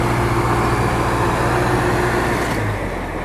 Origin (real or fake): real